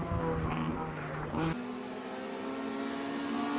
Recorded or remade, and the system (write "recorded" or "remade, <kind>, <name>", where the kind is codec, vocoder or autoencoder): recorded